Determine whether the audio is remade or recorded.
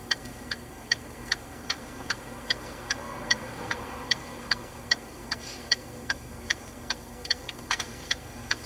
remade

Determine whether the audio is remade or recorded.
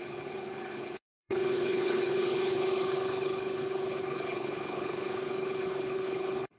remade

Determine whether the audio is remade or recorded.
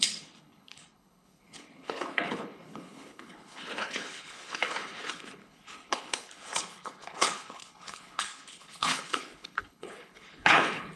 remade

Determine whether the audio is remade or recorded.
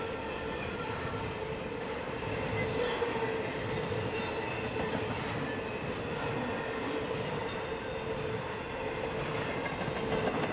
recorded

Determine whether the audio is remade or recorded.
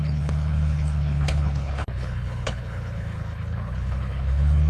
remade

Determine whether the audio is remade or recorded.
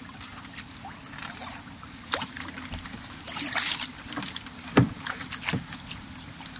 recorded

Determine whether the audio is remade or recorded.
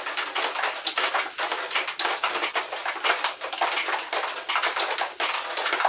recorded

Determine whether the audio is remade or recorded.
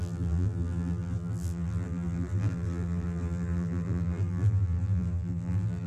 remade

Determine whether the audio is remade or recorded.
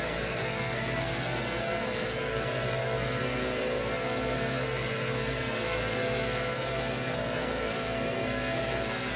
remade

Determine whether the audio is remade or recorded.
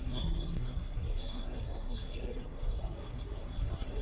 remade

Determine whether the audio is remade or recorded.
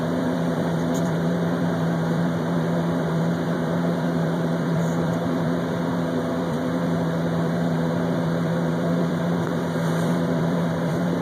remade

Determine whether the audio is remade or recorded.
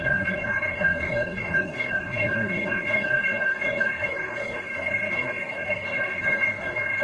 remade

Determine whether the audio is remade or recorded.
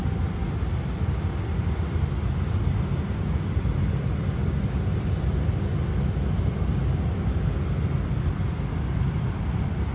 recorded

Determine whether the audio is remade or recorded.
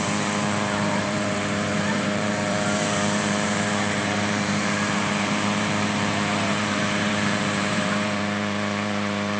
remade